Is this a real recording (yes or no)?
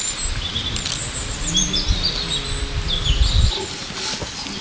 yes